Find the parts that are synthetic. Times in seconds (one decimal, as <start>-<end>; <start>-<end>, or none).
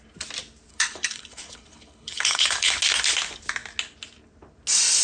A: 0.7-2.7